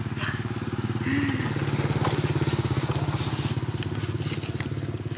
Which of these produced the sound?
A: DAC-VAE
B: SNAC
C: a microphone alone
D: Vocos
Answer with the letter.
C